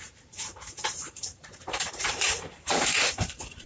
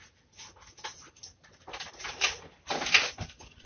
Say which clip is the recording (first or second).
second